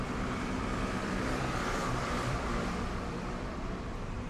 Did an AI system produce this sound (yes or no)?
yes